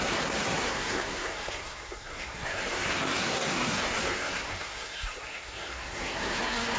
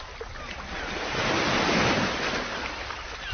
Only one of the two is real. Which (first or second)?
second